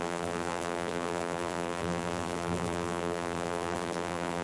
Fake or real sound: fake